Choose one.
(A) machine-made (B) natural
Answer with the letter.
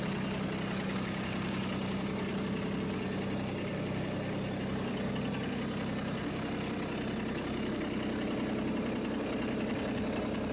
B